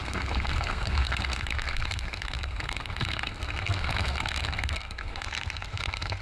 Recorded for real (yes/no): no